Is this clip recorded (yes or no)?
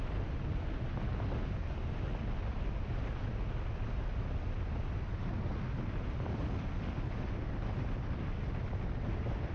yes